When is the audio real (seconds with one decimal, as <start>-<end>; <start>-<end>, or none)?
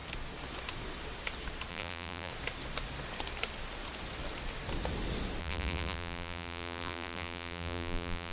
0.0-1.7; 2.3-5.4